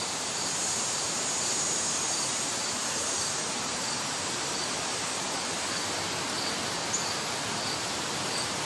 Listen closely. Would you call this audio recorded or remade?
remade